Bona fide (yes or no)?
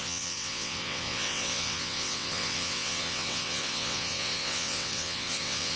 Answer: no